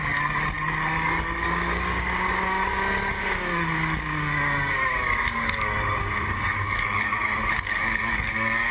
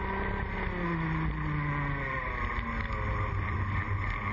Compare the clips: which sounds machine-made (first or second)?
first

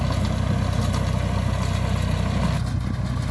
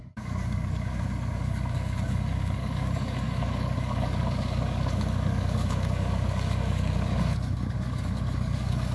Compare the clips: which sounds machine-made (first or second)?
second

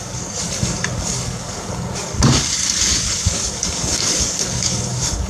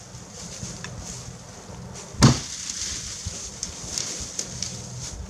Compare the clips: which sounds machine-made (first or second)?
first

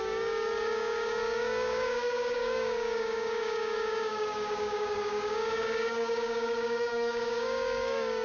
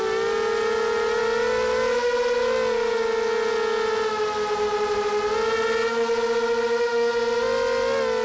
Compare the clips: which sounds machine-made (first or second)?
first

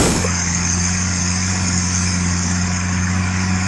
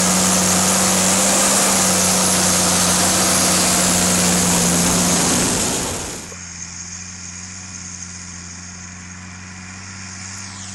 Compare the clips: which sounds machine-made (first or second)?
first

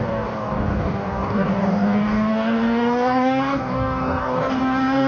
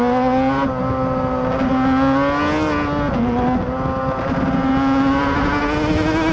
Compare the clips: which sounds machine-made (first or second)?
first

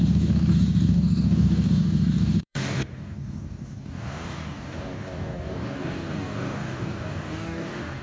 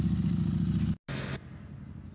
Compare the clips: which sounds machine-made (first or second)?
first